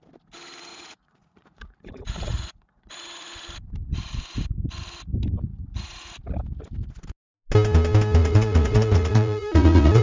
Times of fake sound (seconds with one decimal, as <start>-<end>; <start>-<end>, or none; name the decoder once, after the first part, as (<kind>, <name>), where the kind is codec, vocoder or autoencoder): 0.7-2.9 (vocoder, Vocos); 5.5-6.1; 8.2-10.0